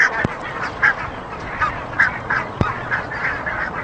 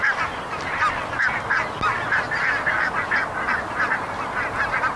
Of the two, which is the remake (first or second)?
first